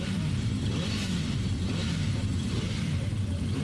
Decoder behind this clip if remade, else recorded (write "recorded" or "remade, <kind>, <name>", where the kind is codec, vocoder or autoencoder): remade, vocoder, BigVGAN v2